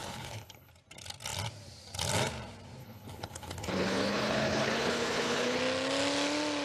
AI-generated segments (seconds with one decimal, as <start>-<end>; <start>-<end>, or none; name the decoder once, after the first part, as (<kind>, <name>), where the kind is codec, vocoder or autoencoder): 0.0-0.7 (codec, HILCodec); 2.8-5.6